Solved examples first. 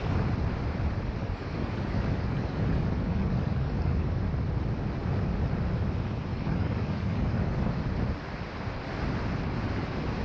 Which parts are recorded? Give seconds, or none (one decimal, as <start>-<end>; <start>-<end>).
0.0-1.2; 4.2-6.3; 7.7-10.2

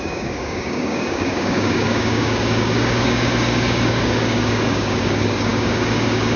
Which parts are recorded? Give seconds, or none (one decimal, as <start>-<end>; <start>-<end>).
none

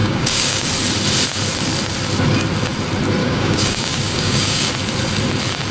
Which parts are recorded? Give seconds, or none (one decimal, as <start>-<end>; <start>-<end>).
0.7-3.2; 4.7-5.7

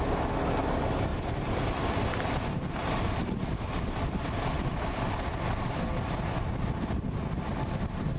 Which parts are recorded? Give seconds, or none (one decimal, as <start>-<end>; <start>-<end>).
0.0-8.2

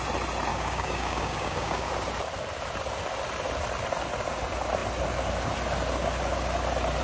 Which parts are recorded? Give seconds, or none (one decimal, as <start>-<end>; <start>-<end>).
0.0-0.5; 1.9-7.0